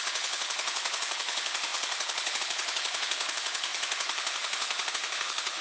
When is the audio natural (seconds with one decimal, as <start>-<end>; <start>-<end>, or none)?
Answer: none